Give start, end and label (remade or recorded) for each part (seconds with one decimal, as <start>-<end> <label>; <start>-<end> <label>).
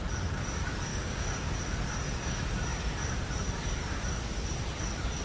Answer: 0.0-0.9 recorded; 0.9-1.5 remade; 1.5-5.2 recorded